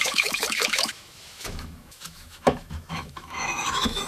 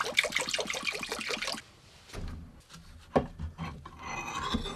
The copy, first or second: first